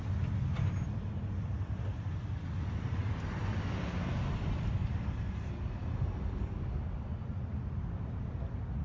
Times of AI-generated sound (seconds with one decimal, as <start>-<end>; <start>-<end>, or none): none